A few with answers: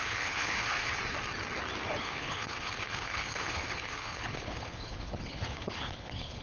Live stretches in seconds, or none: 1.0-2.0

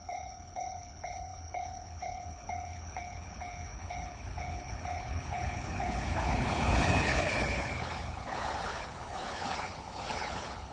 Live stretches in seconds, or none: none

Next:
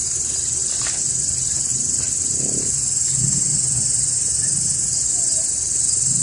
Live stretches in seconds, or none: 0.0-6.2